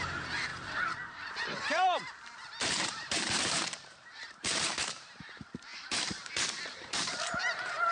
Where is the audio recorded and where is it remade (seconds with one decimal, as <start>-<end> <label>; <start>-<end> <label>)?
0.0-0.5 recorded; 0.5-5.2 remade; 5.2-5.7 recorded; 5.7-6.3 remade; 6.3-6.7 recorded; 6.7-7.3 remade; 7.3-7.9 recorded